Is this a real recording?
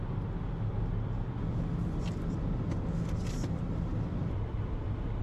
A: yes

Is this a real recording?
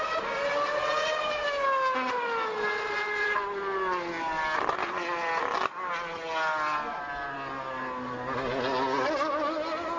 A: yes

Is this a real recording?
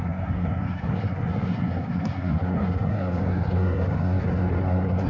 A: no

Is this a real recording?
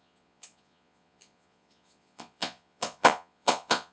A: no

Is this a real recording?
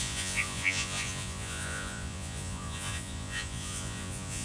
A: no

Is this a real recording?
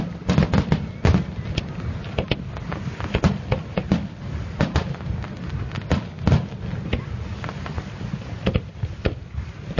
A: yes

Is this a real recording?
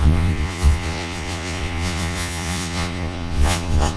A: no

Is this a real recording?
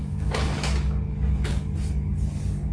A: no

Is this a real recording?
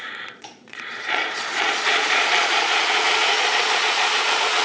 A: no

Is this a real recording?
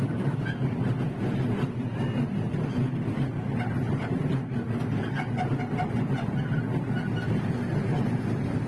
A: yes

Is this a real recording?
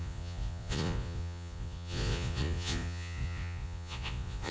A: no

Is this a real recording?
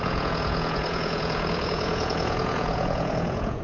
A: no